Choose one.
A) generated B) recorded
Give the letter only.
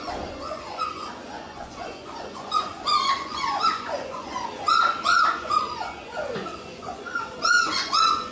A